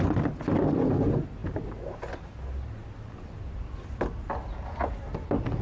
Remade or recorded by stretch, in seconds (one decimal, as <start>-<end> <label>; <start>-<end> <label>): 0.0-5.6 recorded